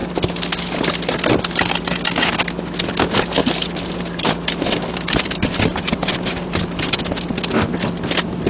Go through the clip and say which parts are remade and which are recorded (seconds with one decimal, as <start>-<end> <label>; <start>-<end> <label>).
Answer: 0.0-3.4 recorded; 3.4-7.0 remade; 7.0-8.5 recorded